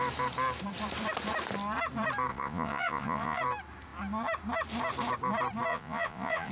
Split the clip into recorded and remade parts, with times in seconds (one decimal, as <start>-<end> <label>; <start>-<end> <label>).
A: 0.0-2.3 recorded; 2.3-3.4 remade; 3.4-5.7 recorded; 5.7-6.5 remade